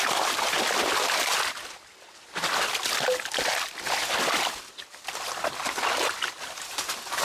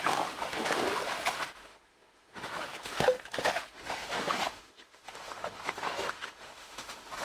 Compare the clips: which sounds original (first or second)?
first